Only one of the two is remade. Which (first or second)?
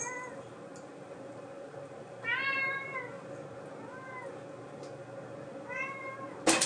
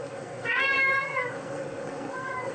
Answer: second